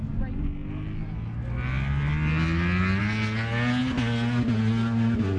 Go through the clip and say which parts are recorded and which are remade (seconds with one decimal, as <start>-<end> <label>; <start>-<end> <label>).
0.0-5.4 recorded